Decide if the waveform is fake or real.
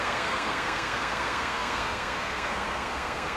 fake